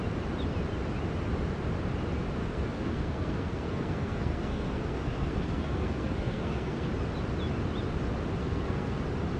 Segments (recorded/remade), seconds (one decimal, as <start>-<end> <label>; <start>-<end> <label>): 0.0-2.4 recorded; 2.4-6.9 remade; 6.9-8.4 recorded; 8.4-9.0 remade; 9.0-9.4 recorded